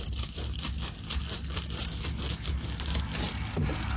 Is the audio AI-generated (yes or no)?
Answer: no